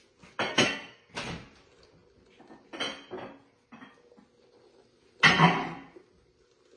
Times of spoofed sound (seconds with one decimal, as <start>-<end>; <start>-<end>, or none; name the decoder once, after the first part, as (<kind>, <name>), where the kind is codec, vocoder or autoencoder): 0.5-1.1 (codec, SNAC)